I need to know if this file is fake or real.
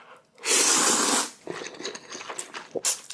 real